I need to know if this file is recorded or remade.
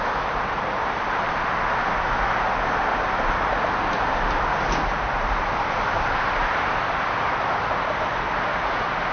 recorded